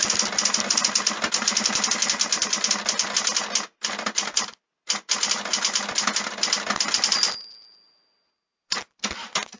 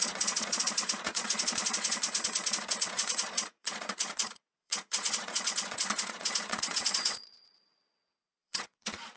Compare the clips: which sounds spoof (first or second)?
second